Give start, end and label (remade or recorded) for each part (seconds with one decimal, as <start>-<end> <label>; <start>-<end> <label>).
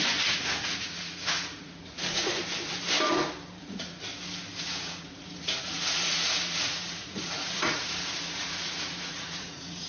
0.0-2.4 remade; 2.4-3.6 recorded; 3.6-4.1 remade; 4.1-4.6 recorded; 4.6-9.9 remade